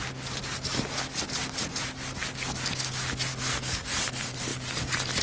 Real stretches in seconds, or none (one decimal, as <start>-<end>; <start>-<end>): 0.0-3.3; 3.9-5.2